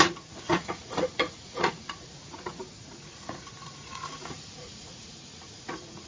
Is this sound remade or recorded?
remade